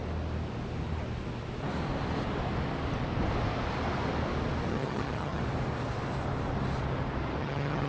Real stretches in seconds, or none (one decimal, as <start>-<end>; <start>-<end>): 0.0-4.7; 5.4-7.4